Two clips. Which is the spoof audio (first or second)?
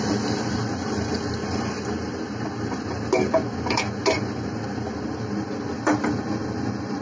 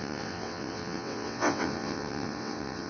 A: second